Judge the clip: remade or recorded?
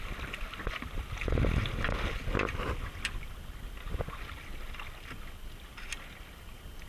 recorded